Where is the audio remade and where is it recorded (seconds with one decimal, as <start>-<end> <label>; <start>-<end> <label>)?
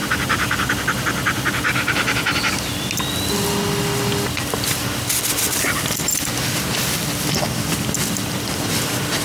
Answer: 0.0-9.2 recorded